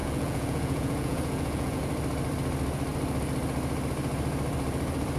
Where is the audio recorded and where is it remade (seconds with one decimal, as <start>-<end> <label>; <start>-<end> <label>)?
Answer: 0.0-1.8 remade; 1.8-5.2 recorded